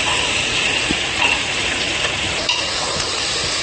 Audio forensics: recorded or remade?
remade